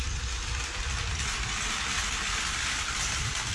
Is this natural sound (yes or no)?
yes